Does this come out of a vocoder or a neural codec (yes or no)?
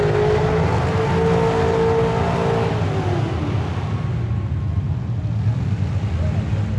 no